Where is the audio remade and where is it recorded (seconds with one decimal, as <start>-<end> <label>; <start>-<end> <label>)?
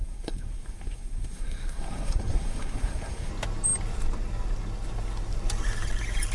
0.0-3.3 remade; 3.3-6.3 recorded